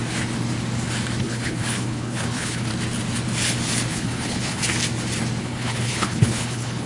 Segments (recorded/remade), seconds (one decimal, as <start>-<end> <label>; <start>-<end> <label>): 0.0-1.2 recorded; 1.2-2.7 remade; 2.7-3.9 recorded; 3.9-4.6 remade; 4.6-5.4 recorded; 5.4-6.9 remade

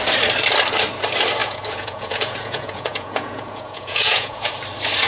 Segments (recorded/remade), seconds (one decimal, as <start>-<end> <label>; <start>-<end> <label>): 0.0-1.4 recorded; 1.4-4.5 remade; 4.5-5.1 recorded

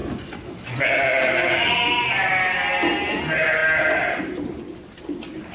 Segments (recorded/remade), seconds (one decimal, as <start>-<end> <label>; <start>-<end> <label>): 0.0-5.5 recorded

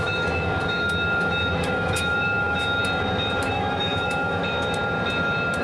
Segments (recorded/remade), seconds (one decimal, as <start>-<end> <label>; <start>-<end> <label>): 0.0-2.8 remade; 2.8-3.4 recorded; 3.4-4.4 remade; 4.4-5.6 recorded

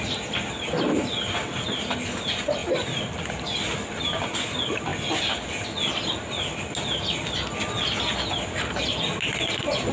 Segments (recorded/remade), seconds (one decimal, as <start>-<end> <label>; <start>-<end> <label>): 0.0-9.9 recorded

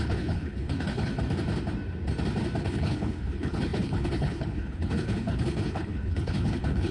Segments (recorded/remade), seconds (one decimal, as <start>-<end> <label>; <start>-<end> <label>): 0.0-1.1 remade; 1.1-2.6 recorded; 2.6-6.9 remade

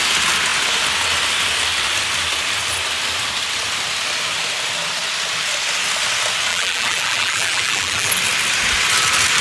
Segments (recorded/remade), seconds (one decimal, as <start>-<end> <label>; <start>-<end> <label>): 0.0-6.5 recorded; 6.5-8.1 remade; 8.1-9.4 recorded